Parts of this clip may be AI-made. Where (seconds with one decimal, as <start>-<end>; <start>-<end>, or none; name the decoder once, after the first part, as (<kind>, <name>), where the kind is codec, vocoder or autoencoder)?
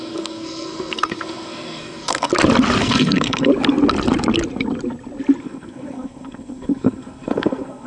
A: 0.0-2.3 (codec, SNAC); 2.8-3.5; 5.4-7.9